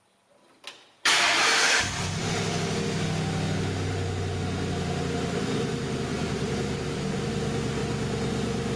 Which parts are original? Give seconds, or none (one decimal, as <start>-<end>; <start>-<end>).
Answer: 0.0-6.1; 7.3-8.8